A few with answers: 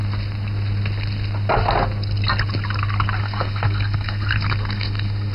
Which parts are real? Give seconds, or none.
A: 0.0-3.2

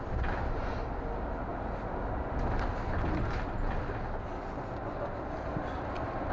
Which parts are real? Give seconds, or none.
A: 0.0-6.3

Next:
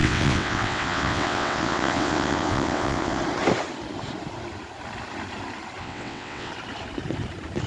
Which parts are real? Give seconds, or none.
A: 3.2-5.8; 6.5-7.7